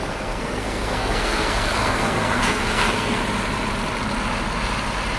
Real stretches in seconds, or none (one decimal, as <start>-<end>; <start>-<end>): 3.2-5.2